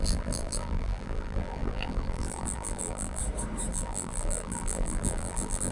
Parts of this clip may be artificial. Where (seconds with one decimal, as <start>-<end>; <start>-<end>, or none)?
0.0-3.2; 3.7-5.7